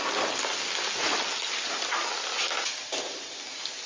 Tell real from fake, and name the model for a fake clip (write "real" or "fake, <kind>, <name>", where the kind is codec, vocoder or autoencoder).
real